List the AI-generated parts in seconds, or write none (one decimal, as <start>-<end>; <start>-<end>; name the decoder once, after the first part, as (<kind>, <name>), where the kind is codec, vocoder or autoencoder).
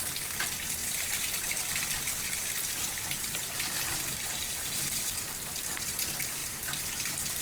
0.8-1.6 (vocoder, BigVGAN v2); 2.8-6.0; 6.4-7.4